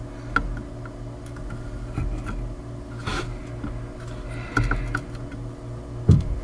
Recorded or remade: recorded